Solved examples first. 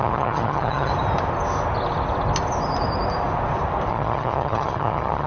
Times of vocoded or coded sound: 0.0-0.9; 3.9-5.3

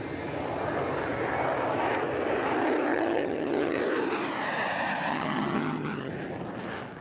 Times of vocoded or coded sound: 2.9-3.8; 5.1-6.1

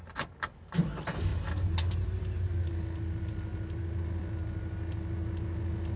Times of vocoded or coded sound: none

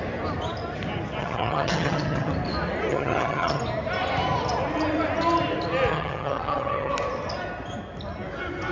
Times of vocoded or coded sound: 1.2-2.3; 2.9-3.6; 5.9-6.9

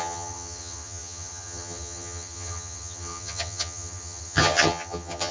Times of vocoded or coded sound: 0.0-5.3

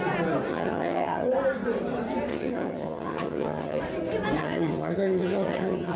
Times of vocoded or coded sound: 0.5-1.3; 2.3-3.8; 4.4-6.0

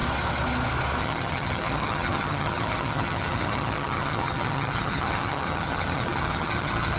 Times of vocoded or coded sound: 1.0-7.0